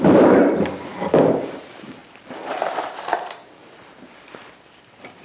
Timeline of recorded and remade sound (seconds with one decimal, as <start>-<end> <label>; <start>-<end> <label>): 0.0-0.9 remade; 0.9-1.4 recorded; 1.4-5.2 remade